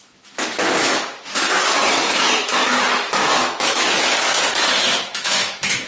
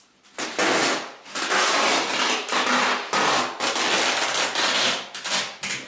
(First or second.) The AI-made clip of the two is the first